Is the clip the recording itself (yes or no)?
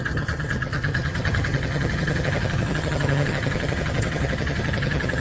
no